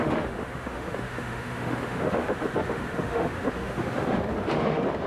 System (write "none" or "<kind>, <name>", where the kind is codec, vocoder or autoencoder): autoencoder, DAC-VAE